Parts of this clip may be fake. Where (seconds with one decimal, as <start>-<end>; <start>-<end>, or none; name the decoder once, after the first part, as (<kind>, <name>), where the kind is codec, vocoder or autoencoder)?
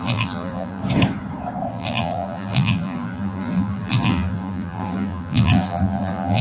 0.0-0.8 (vocoder, BigVGAN v2); 1.7-6.4